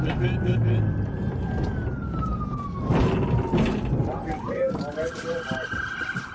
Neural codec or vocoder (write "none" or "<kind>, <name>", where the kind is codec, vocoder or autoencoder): none